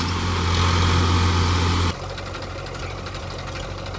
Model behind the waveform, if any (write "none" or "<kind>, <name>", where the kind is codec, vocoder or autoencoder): none